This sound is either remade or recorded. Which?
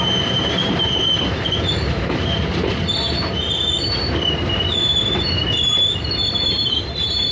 remade